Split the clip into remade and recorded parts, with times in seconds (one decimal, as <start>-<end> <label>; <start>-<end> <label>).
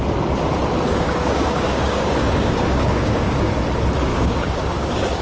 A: 0.0-0.9 recorded; 0.9-3.5 remade; 3.5-4.1 recorded; 4.1-5.2 remade